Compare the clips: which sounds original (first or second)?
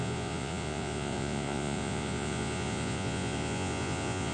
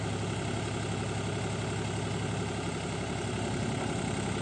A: second